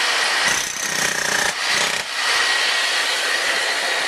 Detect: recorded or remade recorded